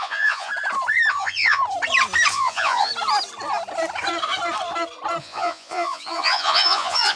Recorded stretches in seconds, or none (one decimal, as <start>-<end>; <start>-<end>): 0.5-1.1; 1.6-2.3; 2.9-5.2